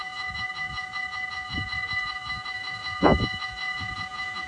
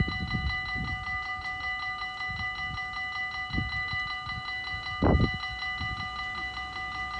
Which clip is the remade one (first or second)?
first